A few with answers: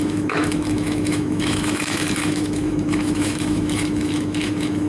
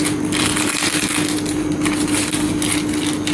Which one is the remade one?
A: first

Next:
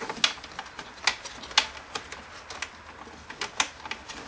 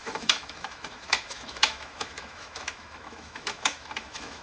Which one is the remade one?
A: second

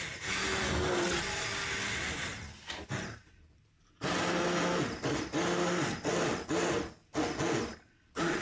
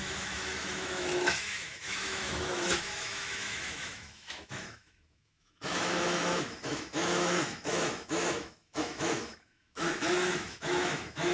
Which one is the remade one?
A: second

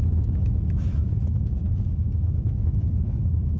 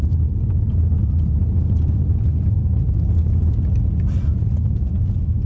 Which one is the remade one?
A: first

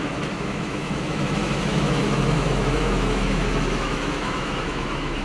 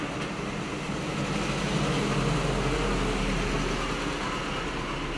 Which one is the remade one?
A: first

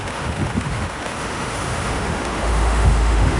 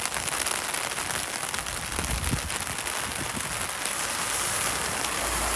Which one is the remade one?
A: first